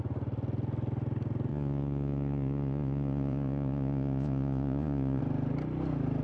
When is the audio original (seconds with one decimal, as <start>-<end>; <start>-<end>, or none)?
0.0-1.5; 5.2-6.2